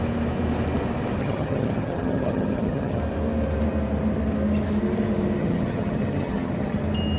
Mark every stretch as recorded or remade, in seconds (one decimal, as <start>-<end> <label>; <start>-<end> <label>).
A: 0.0-1.2 recorded; 1.2-3.0 remade; 3.0-5.4 recorded; 5.4-6.8 remade; 6.8-7.2 recorded